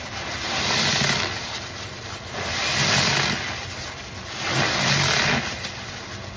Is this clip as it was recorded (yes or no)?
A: yes